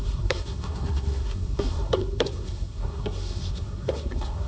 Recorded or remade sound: remade